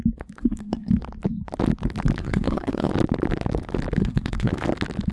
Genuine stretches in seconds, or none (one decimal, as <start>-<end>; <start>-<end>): 0.0-0.4; 0.9-2.2; 2.9-4.0; 4.5-5.1